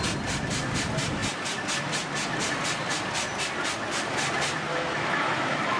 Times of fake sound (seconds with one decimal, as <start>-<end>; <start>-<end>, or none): 4.7-5.8